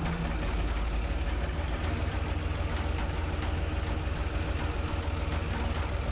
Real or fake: real